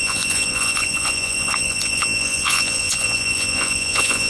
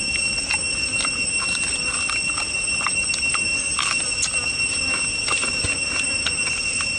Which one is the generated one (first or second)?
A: first